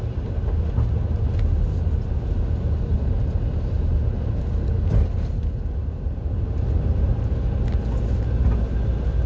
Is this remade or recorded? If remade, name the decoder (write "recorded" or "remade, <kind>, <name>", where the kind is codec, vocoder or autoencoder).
recorded